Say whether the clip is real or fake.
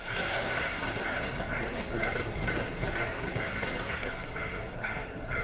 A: fake